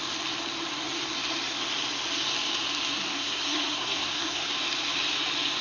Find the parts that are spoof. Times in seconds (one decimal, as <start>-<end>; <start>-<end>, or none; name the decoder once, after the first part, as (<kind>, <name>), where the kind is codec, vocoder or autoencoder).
3.1-4.5 (codec, SNAC)